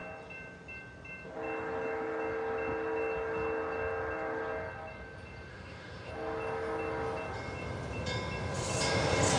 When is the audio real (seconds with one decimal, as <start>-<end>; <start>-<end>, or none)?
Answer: 0.0-5.5; 6.1-9.4